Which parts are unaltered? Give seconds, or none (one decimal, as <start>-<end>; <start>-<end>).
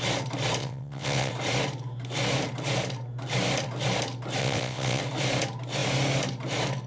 0.0-0.6; 1.3-4.4; 5.0-6.9